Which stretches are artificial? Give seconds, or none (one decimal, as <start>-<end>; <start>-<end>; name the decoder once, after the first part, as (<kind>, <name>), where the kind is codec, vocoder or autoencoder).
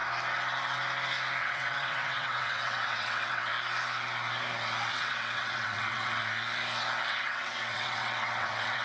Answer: 1.4-3.5 (vocoder, WaveNeXt); 4.9-6.2; 7.1-8.8